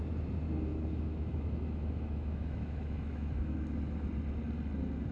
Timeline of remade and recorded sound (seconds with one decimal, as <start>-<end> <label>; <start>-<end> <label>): 0.0-0.7 recorded; 0.7-3.8 remade; 3.8-5.1 recorded